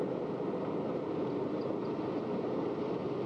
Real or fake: real